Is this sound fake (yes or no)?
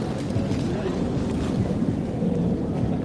no